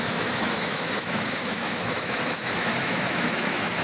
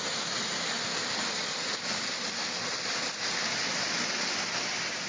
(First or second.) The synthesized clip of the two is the first